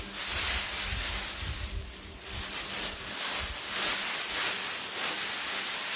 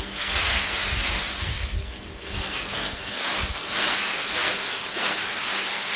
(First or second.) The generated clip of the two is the second